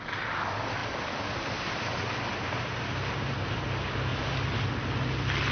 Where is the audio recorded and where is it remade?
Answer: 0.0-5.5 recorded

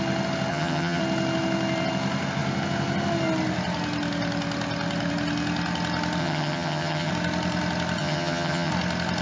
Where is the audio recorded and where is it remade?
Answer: 0.0-0.5 recorded; 0.5-1.0 remade; 1.0-6.2 recorded; 6.2-7.1 remade; 7.1-8.0 recorded; 8.0-8.7 remade; 8.7-9.2 recorded

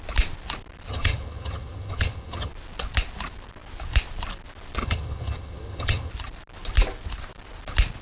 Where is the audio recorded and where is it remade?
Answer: 0.0-0.9 recorded; 0.9-2.5 remade; 2.5-4.8 recorded; 4.8-6.1 remade; 6.1-8.0 recorded

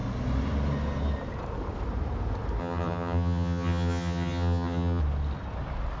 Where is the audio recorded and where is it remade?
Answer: 0.0-2.6 recorded; 2.6-5.0 remade; 5.0-6.0 recorded

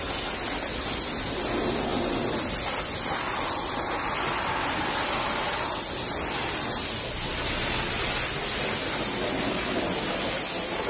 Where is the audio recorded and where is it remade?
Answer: 0.0-10.9 recorded

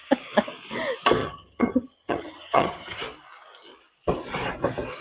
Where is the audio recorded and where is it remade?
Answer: 0.0-1.2 recorded; 1.2-3.0 remade; 3.0-5.0 recorded